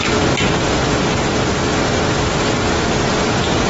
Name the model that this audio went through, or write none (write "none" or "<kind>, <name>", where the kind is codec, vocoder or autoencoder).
none